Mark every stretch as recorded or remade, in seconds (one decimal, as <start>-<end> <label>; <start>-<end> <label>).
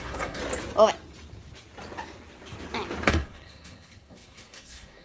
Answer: 0.0-0.4 remade; 0.4-3.1 recorded; 3.1-5.0 remade